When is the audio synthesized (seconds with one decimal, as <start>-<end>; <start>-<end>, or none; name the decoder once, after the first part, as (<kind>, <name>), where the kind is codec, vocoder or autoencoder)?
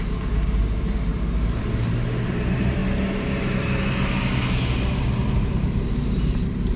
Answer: 0.0-1.1 (vocoder, BigVGAN v2); 1.6-2.8; 5.0-6.8